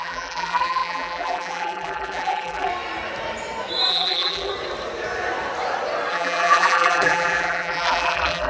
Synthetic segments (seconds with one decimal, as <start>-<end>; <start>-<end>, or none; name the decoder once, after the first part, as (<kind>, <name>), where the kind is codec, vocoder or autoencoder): 0.0-2.7 (vocoder, BigVGAN v2); 3.9-4.5; 6.1-8.5

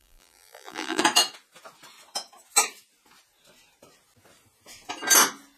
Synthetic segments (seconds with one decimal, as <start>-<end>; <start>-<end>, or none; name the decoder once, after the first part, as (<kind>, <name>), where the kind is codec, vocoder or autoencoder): 0.0-1.0 (vocoder, BigVGAN v2)

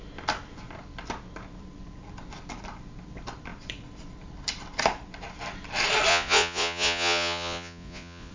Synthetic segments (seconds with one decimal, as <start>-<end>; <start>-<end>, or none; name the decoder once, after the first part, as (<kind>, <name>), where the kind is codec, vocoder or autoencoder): 6.1-8.3 (vocoder, Vocos)

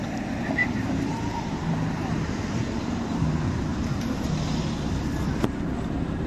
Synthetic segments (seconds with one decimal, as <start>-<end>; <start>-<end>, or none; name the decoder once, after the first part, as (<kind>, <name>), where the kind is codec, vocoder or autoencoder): 0.6-2.2 (vocoder, BigVGAN v2); 3.7-4.3

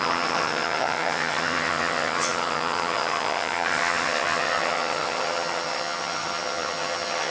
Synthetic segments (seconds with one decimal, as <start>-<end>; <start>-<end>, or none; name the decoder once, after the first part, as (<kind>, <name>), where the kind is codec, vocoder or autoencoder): 0.0-7.3 (vocoder, HiFi-GAN)

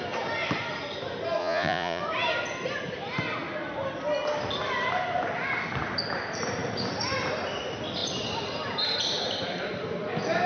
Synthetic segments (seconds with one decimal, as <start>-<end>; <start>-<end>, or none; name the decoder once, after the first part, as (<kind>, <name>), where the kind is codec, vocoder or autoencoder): 1.4-2.0 (vocoder, Vocos)

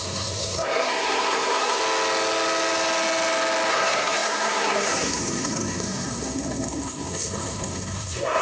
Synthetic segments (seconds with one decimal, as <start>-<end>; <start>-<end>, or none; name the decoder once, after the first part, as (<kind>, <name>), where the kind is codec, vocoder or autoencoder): 0.0-1.8 (codec, SNAC); 3.7-8.4